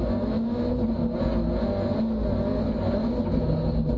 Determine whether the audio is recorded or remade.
recorded